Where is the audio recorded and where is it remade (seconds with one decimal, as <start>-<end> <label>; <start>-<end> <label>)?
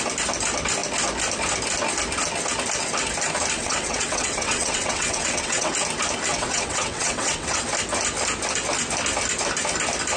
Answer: 0.0-3.6 recorded; 3.6-5.7 remade; 5.7-6.3 recorded; 6.3-7.6 remade; 7.6-10.2 recorded